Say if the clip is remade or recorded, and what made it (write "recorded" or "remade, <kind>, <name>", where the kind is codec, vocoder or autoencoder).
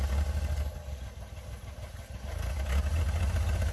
recorded